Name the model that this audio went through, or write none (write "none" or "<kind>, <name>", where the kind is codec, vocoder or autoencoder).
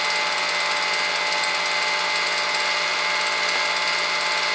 none